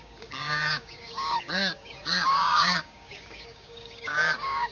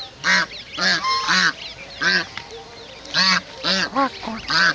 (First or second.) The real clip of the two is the second